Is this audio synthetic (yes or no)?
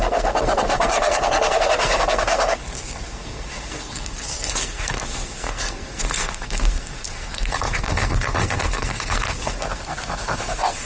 yes